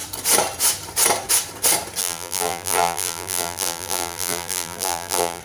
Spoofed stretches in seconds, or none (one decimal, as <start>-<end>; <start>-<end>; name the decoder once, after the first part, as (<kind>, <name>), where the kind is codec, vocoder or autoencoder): 2.0-5.4 (vocoder, BigVGAN v2)